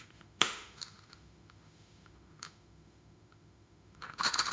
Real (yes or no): no